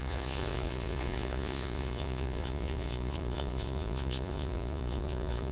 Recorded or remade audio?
remade